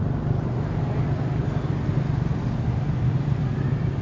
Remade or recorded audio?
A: recorded